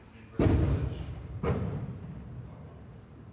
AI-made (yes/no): no